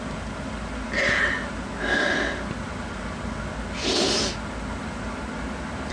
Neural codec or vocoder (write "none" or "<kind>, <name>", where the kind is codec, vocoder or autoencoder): none